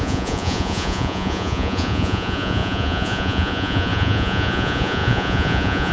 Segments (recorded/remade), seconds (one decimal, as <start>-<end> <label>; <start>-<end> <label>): 0.0-5.9 remade